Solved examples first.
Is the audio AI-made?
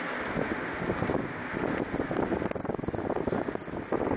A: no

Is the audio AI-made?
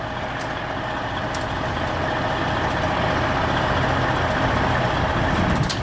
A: no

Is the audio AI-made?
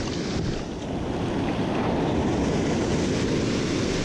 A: no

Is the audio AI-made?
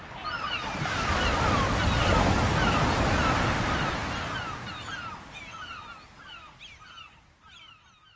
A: no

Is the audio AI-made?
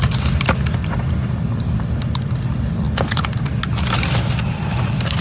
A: no